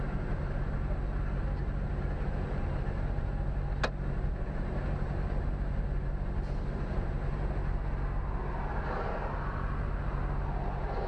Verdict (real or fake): real